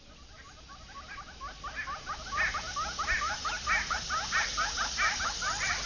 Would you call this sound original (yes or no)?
yes